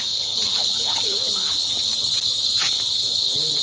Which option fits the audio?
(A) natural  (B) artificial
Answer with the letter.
B